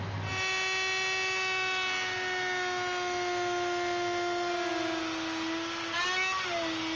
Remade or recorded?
recorded